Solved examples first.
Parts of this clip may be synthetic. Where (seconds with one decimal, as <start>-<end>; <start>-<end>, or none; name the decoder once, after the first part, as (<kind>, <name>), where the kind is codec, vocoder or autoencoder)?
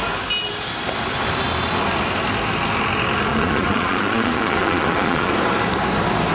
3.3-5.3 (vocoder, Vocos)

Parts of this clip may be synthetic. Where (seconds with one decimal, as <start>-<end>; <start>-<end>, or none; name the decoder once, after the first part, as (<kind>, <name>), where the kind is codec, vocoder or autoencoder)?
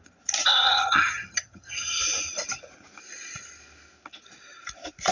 0.4-2.0 (vocoder, HiFi-GAN)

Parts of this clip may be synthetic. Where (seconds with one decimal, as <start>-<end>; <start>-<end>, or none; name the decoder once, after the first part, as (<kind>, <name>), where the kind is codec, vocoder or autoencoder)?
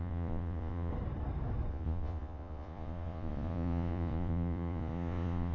0.0-0.9 (vocoder, Vocos); 1.7-5.5